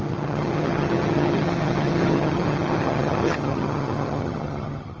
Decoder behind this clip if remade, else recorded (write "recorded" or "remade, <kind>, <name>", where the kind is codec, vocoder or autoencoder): remade, vocoder, HiFi-GAN